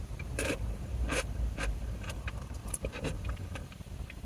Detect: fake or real fake